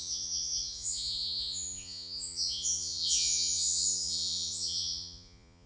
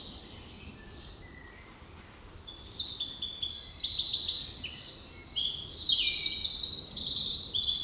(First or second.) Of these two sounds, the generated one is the first